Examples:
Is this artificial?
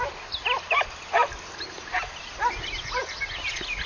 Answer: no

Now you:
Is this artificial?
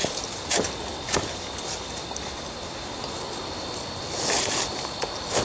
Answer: no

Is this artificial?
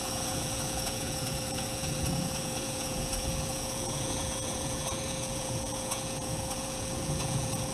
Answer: yes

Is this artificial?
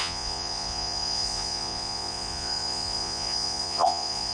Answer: yes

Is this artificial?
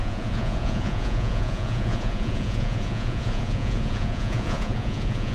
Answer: yes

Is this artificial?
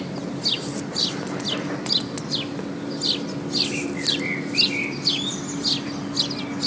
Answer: no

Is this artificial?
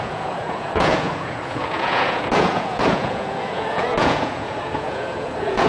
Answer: yes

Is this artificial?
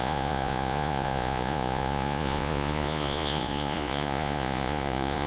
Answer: yes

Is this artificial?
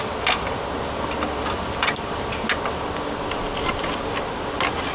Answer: no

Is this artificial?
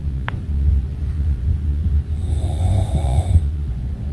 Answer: yes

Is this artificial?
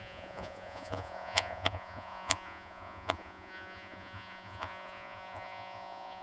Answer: yes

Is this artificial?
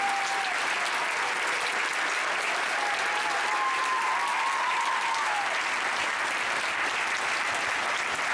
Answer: no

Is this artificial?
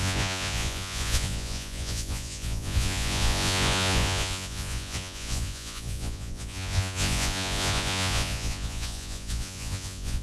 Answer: yes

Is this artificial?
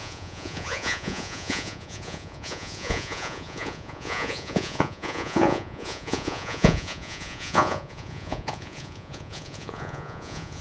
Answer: yes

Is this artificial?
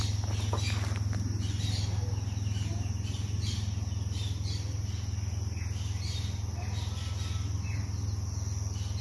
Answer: no